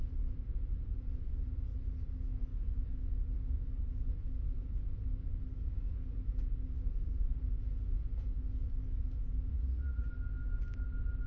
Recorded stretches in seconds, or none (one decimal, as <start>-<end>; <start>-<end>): 0.0-9.5; 10.1-11.3